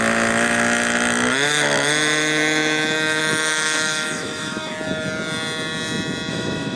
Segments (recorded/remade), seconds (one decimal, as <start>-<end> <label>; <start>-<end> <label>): 0.0-4.7 remade; 4.7-6.3 recorded; 6.3-6.8 remade